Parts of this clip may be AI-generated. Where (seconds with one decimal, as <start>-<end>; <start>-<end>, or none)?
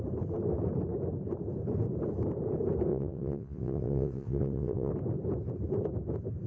2.9-4.9